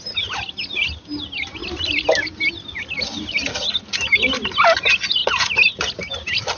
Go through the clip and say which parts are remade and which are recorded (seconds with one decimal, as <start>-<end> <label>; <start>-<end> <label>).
0.0-6.6 recorded